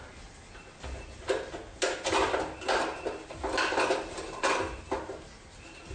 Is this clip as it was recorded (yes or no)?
yes